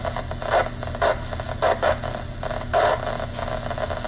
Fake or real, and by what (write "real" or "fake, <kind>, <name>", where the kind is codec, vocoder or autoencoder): real